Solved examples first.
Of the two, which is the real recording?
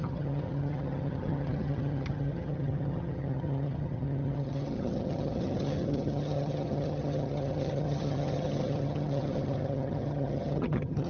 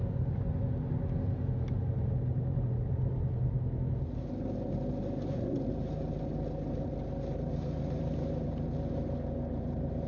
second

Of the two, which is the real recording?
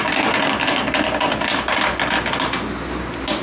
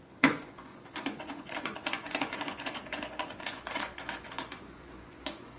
first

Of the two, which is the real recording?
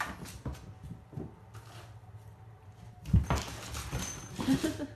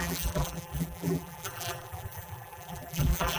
first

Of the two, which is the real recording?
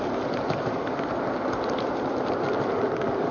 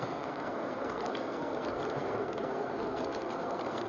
first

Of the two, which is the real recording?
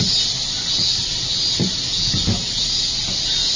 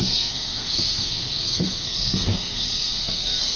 first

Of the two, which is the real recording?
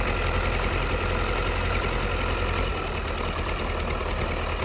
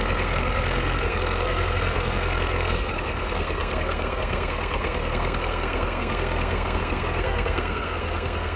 first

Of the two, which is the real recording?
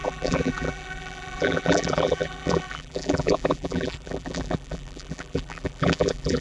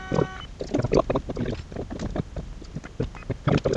second